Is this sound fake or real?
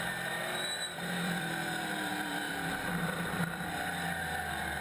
fake